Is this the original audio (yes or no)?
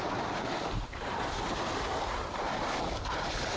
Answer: yes